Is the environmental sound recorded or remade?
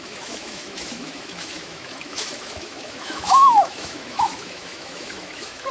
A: remade